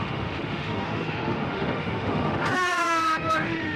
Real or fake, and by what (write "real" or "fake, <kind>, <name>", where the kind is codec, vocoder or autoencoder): fake, autoencoder, DAC-VAE